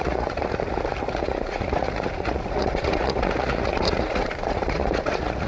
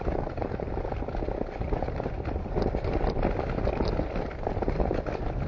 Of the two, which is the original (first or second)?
second